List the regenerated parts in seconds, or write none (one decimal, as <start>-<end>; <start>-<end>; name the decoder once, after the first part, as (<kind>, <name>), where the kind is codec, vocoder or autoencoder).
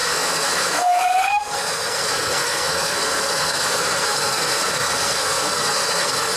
0.0-6.4 (codec, SNAC)